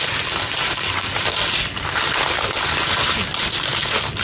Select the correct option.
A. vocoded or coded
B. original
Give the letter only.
B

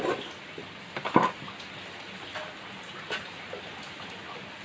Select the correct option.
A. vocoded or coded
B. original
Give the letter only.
B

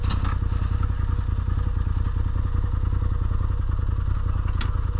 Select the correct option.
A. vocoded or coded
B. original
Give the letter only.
B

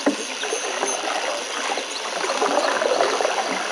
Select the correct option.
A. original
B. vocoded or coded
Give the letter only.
B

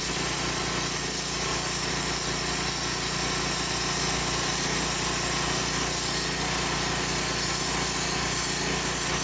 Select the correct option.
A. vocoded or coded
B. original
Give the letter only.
B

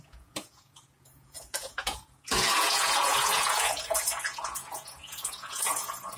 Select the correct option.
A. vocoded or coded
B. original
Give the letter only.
A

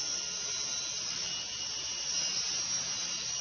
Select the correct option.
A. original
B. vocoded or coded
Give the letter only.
A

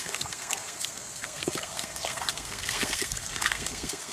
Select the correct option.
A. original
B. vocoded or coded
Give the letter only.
B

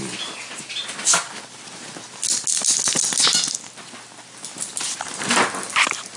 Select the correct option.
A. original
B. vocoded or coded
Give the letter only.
A